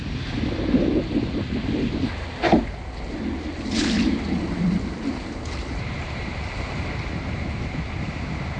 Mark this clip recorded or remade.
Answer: recorded